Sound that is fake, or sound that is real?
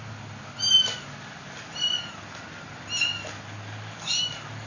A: real